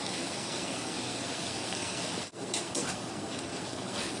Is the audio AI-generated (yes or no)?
yes